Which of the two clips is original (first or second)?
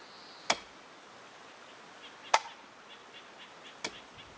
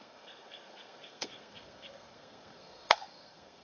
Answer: first